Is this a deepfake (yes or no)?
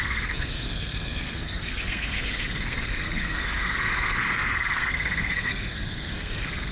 yes